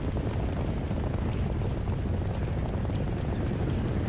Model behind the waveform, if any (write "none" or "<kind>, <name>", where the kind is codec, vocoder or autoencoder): none